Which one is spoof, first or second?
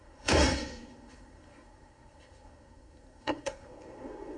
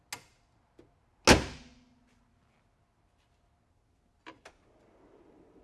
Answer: first